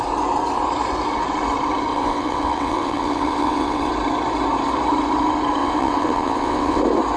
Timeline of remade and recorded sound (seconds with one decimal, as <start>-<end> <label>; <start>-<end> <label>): 0.0-1.9 recorded; 1.9-3.9 remade; 3.9-5.6 recorded; 5.6-6.8 remade; 6.8-7.2 recorded